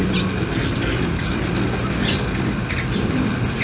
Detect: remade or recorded recorded